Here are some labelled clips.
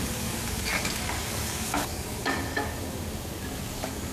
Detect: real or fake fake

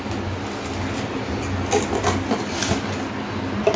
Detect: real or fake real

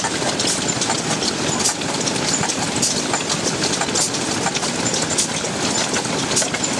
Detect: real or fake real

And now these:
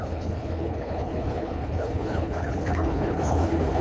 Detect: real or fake fake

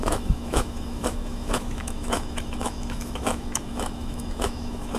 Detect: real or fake fake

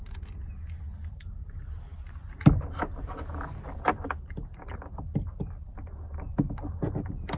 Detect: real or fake real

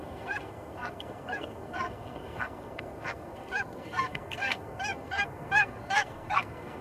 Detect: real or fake fake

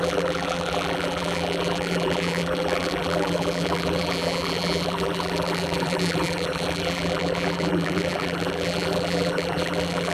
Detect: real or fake fake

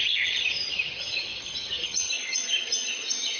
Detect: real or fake fake